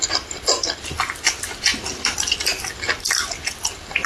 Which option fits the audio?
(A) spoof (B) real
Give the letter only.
B